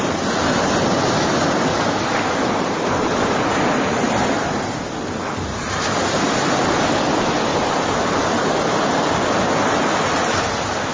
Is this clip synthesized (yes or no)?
no